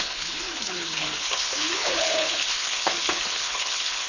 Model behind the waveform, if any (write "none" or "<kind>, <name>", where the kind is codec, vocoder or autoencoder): codec, HILCodec